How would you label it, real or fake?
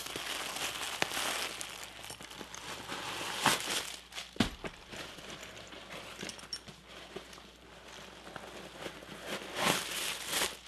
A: real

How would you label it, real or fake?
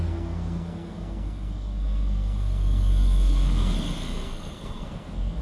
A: fake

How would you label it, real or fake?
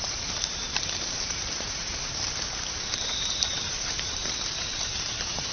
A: fake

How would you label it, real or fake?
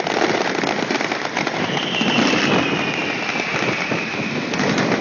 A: real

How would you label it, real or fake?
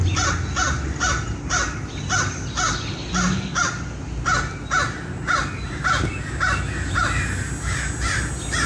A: real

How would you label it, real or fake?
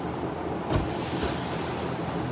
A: real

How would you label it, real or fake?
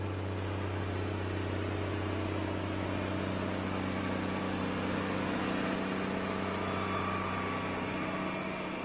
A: real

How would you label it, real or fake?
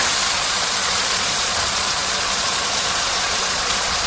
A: fake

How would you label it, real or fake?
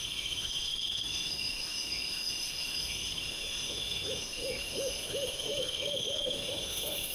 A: fake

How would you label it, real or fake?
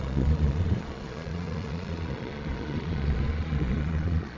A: fake